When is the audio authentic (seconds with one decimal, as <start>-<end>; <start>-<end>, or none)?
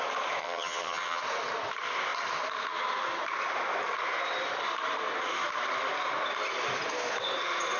0.0-0.4; 1.2-7.8